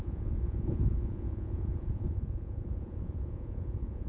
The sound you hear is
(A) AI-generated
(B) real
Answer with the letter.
A